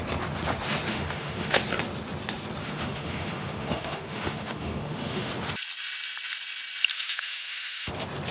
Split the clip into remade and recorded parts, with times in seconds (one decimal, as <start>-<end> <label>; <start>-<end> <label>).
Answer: 0.0-0.9 recorded; 0.9-1.6 remade; 1.6-2.6 recorded; 2.6-5.3 remade; 5.3-6.9 recorded; 6.9-7.9 remade; 7.9-8.3 recorded